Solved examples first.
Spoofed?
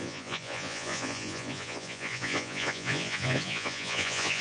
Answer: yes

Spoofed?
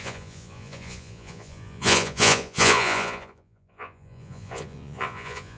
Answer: yes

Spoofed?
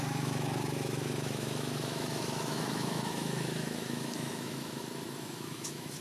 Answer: yes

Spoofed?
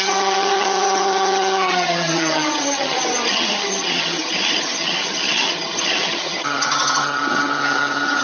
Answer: yes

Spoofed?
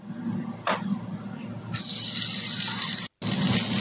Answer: no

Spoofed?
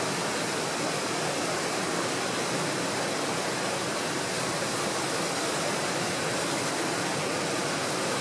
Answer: no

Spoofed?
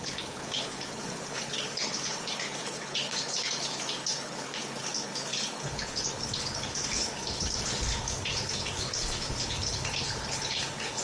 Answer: yes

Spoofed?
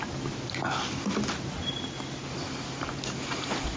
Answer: no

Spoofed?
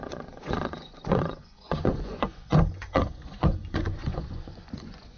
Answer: yes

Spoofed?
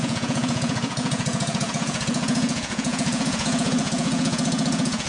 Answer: yes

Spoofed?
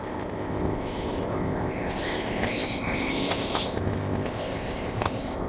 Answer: yes